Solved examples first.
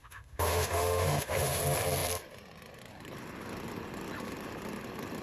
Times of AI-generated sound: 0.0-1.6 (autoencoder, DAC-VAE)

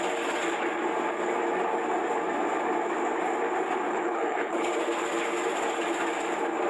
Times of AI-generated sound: 3.9-4.7 (codec, HILCodec)